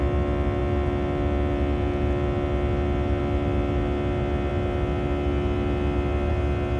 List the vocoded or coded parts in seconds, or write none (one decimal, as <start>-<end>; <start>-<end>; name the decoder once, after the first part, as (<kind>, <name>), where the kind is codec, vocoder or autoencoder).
none